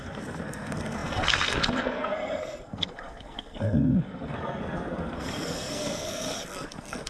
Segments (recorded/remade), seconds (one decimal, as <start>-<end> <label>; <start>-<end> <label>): 0.0-7.1 remade